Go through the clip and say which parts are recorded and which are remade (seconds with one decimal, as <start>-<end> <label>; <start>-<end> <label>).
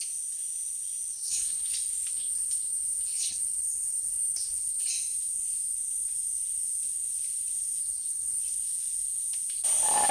0.0-1.1 recorded; 1.1-1.7 remade; 1.7-2.1 recorded; 2.1-4.9 remade; 4.9-7.8 recorded; 7.8-8.4 remade; 8.4-10.1 recorded